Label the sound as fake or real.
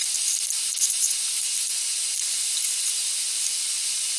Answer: real